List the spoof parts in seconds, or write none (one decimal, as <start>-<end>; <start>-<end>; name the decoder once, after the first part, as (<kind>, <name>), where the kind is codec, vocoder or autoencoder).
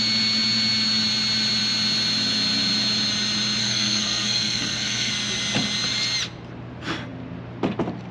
3.6-5.1 (codec, SNAC)